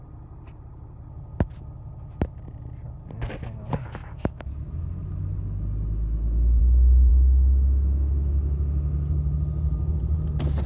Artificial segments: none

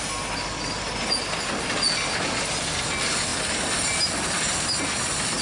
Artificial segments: none

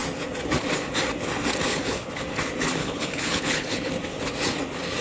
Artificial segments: 1.7-2.2 (codec, HILCodec); 2.8-3.9

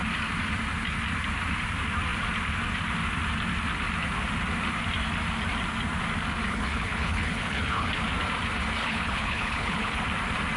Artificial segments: 6.5-7.9 (codec, HILCodec); 8.8-10.0